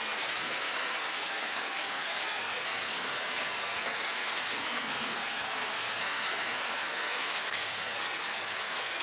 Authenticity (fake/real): fake